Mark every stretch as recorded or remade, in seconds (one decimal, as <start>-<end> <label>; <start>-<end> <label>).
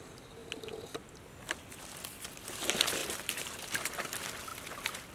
0.0-5.1 recorded